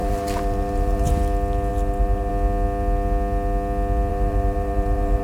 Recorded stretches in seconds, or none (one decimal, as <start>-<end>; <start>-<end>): 1.1-1.7; 2.3-4.1